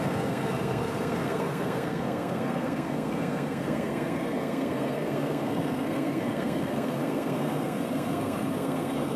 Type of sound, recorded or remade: remade